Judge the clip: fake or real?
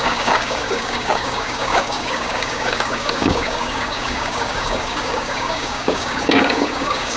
fake